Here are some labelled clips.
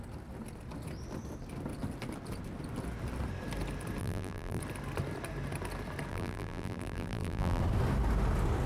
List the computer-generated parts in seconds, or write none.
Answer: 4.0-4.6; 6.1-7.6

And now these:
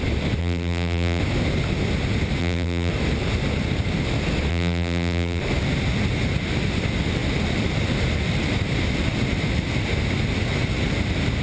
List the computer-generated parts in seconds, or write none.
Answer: 0.4-1.2; 2.4-2.9; 4.5-5.4

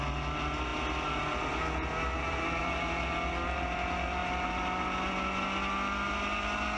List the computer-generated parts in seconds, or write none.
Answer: none

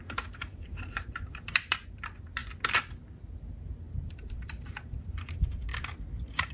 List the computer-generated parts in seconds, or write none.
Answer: 0.0-2.4; 3.7-5.7